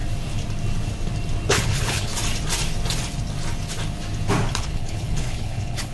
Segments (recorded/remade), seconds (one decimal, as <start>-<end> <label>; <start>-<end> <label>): 0.0-1.5 recorded; 1.5-2.1 remade; 2.1-4.5 recorded; 4.5-5.9 remade